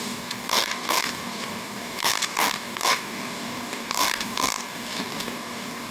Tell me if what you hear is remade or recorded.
remade